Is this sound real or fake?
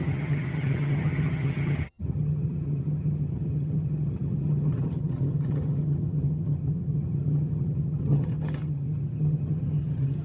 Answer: fake